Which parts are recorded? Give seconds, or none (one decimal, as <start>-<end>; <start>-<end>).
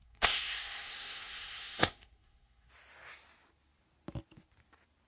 2.7-5.1